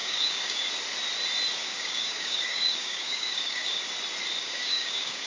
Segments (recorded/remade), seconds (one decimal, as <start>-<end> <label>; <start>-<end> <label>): 0.0-0.7 remade; 0.7-1.6 recorded; 1.6-3.8 remade; 3.8-4.4 recorded; 4.4-5.3 remade